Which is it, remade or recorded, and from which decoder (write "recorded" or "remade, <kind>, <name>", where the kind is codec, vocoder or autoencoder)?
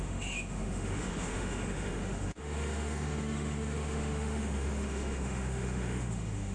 remade, autoencoder, DAC-VAE